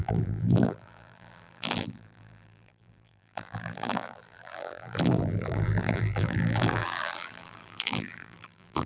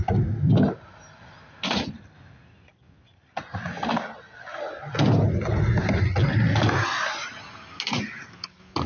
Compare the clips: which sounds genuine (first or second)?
second